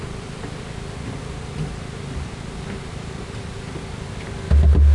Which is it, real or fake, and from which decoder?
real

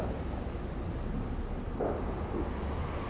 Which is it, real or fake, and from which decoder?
real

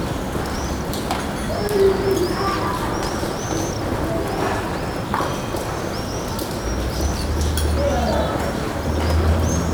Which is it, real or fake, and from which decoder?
real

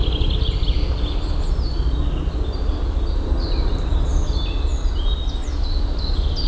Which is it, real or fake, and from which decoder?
real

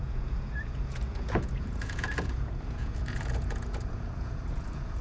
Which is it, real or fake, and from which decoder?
fake, vocoder, Vocos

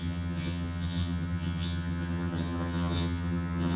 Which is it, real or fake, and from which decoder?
fake, vocoder, HiFi-GAN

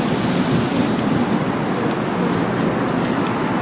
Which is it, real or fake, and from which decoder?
real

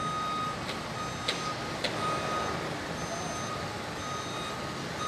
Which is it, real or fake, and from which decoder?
real